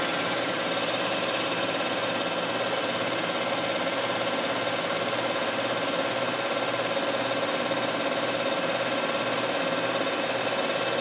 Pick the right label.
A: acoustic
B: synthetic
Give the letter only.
A